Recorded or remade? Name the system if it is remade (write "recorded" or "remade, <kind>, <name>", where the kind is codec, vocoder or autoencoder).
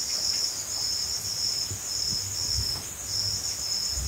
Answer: recorded